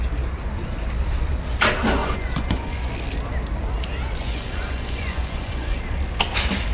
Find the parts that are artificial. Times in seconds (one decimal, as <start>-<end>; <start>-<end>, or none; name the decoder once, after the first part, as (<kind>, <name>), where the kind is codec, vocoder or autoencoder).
2.0-2.9 (vocoder, Vocos); 4.2-5.8